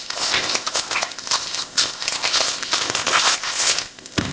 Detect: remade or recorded remade